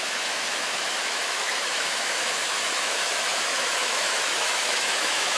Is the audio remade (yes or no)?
yes